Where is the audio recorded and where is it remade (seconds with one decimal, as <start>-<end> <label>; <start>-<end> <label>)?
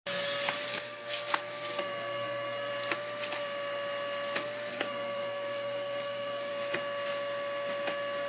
0.0-0.7 recorded; 0.7-2.7 remade; 2.7-4.7 recorded; 4.7-6.5 remade; 6.5-8.3 recorded